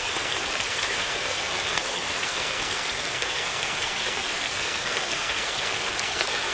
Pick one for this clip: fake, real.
fake